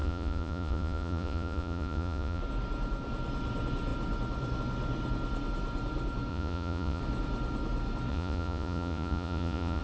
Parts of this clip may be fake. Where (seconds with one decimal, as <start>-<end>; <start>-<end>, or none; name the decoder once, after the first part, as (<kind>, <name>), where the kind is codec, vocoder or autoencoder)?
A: 0.0-2.4 (vocoder, Vocos); 6.3-7.0; 8.1-9.8